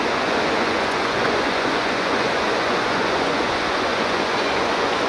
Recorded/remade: remade